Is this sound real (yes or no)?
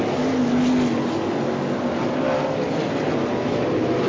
yes